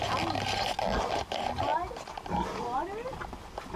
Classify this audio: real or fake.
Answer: real